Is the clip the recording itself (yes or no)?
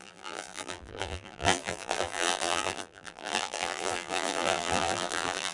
no